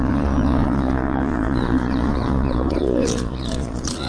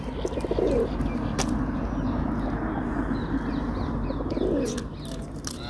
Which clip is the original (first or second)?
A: second